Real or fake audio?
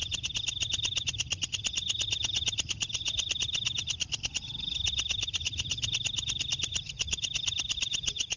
real